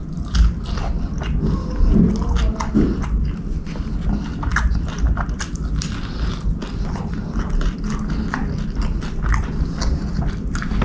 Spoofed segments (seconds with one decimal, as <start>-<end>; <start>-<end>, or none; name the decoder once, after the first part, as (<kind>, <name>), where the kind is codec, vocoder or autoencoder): none